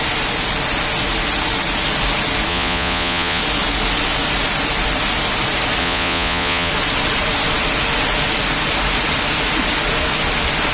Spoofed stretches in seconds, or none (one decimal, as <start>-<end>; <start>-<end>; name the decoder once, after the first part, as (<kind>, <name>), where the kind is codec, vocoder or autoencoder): 2.5-3.4 (vocoder, Vocos); 5.8-6.7